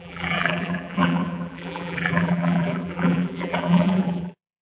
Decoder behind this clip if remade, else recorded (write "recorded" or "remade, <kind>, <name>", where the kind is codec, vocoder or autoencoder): remade, vocoder, BigVGAN v2